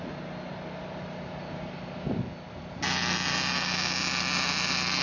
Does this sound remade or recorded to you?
recorded